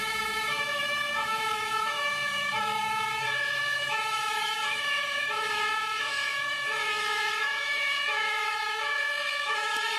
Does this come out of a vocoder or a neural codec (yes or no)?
yes